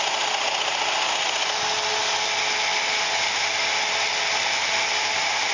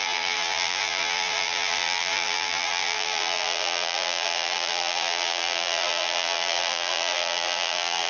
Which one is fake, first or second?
second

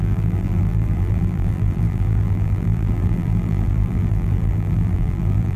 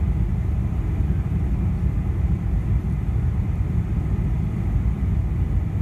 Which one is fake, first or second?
first